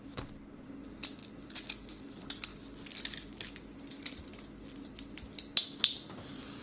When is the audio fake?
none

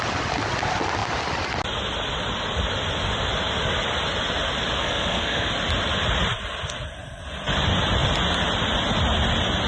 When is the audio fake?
4.8-5.5 (codec, SNAC)